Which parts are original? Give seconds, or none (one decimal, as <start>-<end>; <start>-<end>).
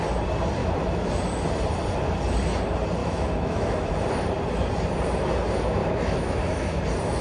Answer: 0.0-0.6; 1.1-3.0; 3.9-5.8; 6.8-7.2